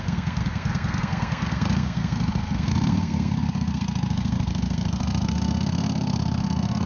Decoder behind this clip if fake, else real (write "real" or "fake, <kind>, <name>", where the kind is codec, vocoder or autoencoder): fake, codec, SNAC